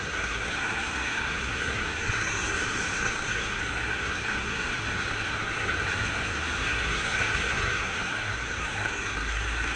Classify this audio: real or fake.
fake